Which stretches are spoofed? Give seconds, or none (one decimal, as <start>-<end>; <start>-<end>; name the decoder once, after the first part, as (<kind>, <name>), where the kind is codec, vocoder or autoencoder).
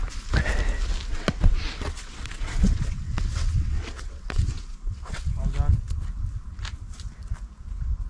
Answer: 1.1-5.3 (vocoder, WaveNeXt)